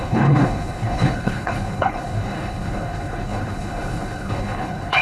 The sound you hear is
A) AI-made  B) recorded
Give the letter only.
A